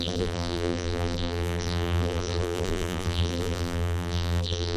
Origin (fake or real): fake